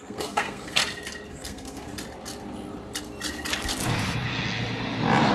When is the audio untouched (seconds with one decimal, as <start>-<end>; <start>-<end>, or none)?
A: 0.8-1.3; 1.9-5.3